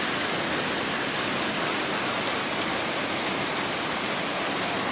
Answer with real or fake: real